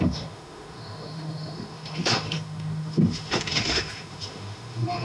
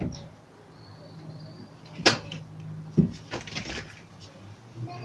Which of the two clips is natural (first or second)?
second